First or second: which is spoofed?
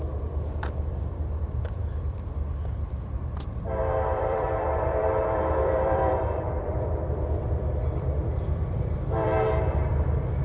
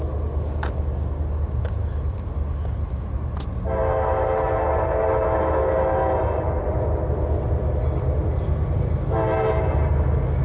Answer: first